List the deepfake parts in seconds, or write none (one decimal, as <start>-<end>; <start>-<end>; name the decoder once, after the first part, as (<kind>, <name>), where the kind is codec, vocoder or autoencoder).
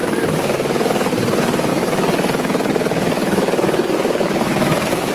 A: 0.0-1.1 (codec, DAC); 1.7-5.1